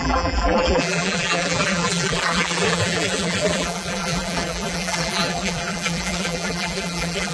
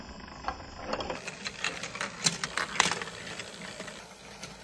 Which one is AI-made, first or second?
first